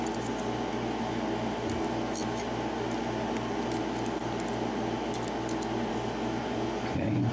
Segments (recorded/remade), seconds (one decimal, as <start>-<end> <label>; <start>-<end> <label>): 0.0-6.4 recorded; 6.4-7.3 remade